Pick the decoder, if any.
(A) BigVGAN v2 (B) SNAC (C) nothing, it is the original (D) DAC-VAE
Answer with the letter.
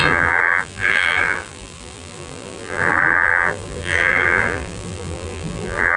A